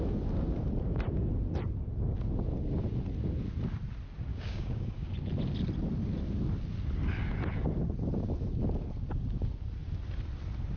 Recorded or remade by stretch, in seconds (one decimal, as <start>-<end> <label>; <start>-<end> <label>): 0.0-4.3 recorded; 4.3-5.1 remade; 5.1-10.8 recorded